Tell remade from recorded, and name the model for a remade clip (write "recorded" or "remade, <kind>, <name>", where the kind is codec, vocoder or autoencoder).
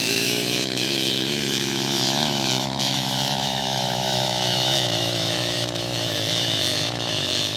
remade, autoencoder, DAC-VAE